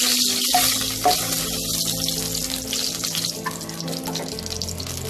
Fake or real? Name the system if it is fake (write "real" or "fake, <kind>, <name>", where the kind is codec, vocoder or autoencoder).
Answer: real